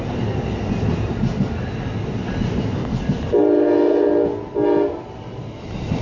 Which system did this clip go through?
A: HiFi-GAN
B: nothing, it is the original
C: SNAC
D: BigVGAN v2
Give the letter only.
B